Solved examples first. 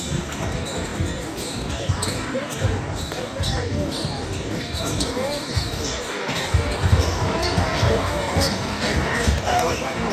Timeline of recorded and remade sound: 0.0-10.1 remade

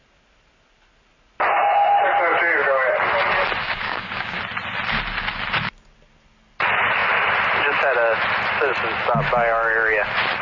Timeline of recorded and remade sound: 0.0-3.6 recorded; 3.6-4.4 remade; 4.4-10.4 recorded